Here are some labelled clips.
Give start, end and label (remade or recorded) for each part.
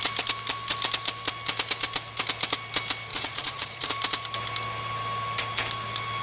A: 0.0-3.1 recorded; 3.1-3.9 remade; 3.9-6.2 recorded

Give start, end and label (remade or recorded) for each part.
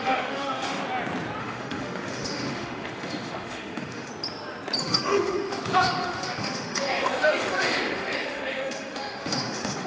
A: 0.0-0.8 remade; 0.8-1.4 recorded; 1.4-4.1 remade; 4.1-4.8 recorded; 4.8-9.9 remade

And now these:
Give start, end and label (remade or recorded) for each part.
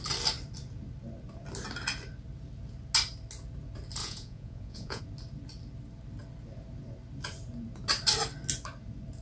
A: 0.0-4.0 recorded; 4.0-5.0 remade; 5.0-9.2 recorded